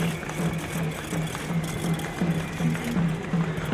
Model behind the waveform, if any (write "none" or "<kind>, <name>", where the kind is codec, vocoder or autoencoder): none